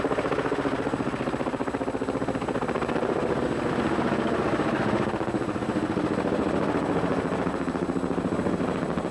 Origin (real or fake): real